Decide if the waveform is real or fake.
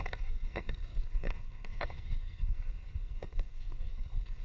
fake